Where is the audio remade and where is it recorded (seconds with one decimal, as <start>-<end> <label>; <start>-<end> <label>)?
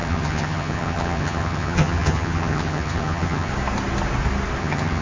0.0-3.5 remade; 3.5-4.6 recorded; 4.6-5.0 remade